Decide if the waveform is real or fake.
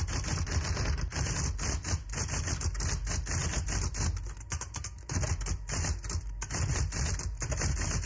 real